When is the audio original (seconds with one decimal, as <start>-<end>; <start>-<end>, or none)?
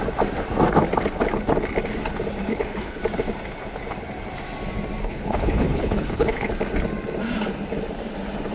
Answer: 0.0-2.5; 3.0-5.0; 6.5-8.5